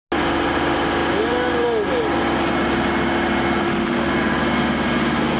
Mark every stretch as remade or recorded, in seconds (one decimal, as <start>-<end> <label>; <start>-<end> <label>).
0.0-3.6 recorded; 3.6-4.1 remade; 4.1-5.4 recorded